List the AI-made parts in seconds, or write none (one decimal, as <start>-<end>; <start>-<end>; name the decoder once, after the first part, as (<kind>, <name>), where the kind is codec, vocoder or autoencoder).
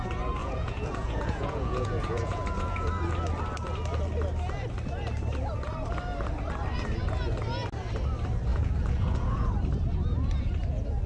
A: 0.4-2.9 (vocoder, Vocos); 8.5-9.5